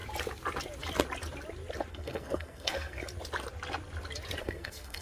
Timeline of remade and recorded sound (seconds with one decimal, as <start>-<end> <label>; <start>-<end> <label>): 0.0-1.9 recorded; 1.9-3.0 remade; 3.0-4.4 recorded; 4.4-5.0 remade